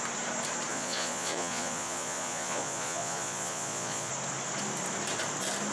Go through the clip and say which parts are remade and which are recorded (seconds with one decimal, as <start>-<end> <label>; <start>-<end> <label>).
0.0-0.7 recorded; 0.7-4.1 remade; 4.1-5.7 recorded